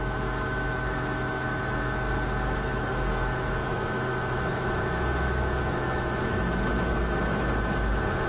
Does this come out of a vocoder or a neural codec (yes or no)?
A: yes